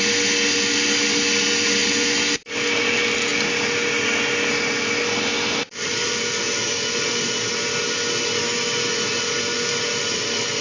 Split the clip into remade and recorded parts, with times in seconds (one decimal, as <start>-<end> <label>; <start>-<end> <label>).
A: 0.0-1.8 recorded; 1.8-2.8 remade; 2.8-3.3 recorded; 3.3-7.1 remade; 7.1-10.6 recorded